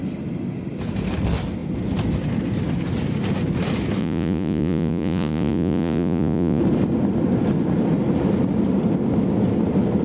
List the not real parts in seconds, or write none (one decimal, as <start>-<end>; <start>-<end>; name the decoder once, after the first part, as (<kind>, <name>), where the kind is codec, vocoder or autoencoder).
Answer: 4.0-6.6 (vocoder, Vocos)